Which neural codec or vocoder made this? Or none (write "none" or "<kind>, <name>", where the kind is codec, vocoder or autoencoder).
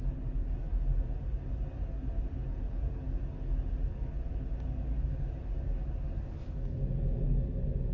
none